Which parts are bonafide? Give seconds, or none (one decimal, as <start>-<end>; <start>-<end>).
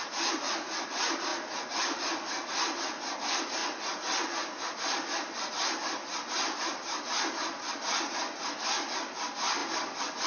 0.0-10.3